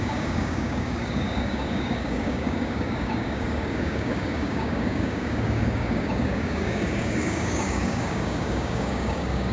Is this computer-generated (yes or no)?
yes